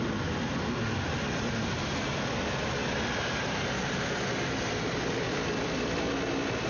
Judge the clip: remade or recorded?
recorded